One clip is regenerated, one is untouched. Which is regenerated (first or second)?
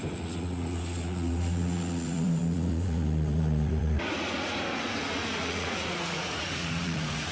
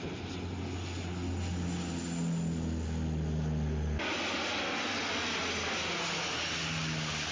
first